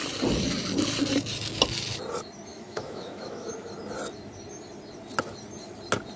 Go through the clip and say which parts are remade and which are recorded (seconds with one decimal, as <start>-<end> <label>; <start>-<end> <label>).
0.0-2.5 recorded; 2.5-3.5 remade; 3.5-6.2 recorded